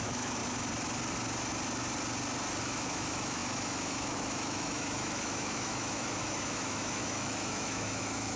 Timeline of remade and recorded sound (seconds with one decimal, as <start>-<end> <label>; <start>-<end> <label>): 0.0-0.4 remade; 0.4-2.6 recorded; 2.6-8.4 remade